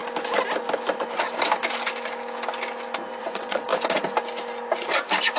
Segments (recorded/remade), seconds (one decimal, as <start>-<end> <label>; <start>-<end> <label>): 0.0-3.2 recorded; 3.2-3.7 remade; 3.7-5.4 recorded